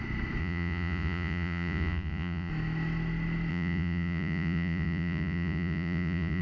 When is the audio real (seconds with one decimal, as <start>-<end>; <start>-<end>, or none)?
0.0-0.4; 2.5-3.5